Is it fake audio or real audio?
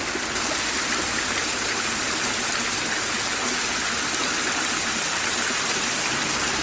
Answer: real